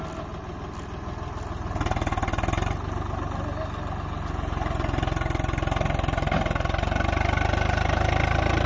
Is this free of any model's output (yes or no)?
yes